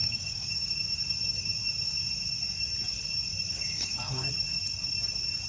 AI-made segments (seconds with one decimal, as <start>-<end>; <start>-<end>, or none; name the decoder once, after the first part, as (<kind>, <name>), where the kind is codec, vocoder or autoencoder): 0.0-0.7 (codec, DAC); 3.5-4.3